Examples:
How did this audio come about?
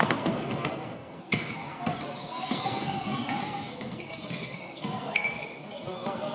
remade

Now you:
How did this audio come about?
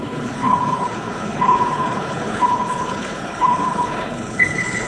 remade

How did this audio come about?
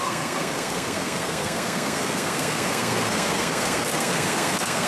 remade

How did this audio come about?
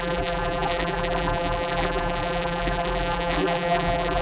remade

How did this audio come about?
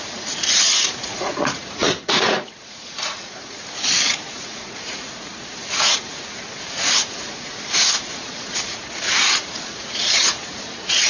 remade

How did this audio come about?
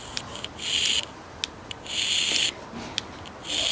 recorded